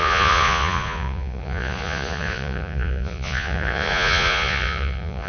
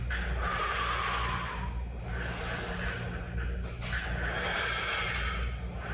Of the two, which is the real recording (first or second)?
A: second